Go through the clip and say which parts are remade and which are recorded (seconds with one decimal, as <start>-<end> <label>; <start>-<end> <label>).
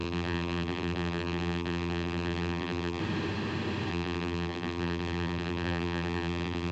0.0-3.0 remade; 3.0-3.9 recorded; 3.9-6.7 remade